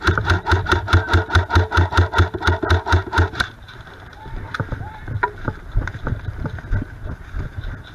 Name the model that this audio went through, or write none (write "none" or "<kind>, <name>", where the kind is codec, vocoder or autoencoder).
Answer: none